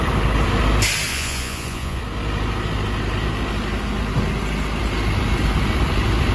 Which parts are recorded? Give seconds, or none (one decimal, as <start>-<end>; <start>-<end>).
0.0-1.1; 2.0-6.3